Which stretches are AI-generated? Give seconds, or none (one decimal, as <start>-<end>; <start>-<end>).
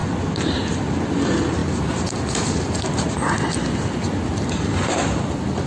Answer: none